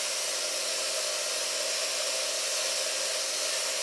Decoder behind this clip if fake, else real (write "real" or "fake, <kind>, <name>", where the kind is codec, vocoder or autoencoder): real